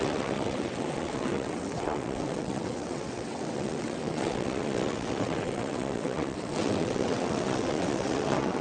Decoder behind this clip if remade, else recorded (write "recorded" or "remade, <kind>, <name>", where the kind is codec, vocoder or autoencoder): remade, vocoder, WaveNeXt